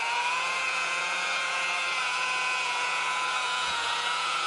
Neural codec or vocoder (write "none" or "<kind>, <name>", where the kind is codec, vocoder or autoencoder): vocoder, Vocos